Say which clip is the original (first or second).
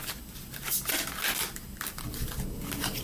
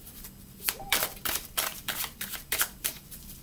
first